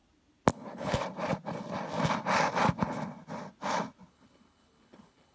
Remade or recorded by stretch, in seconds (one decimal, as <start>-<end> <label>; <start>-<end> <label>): 0.0-0.5 recorded; 0.5-1.0 remade; 1.0-4.1 recorded; 4.1-5.3 remade